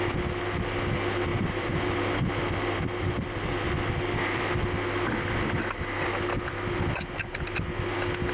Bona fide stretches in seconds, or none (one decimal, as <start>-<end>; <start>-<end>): 0.0-1.3; 1.9-8.3